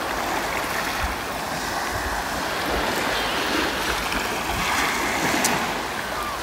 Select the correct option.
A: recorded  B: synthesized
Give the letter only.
A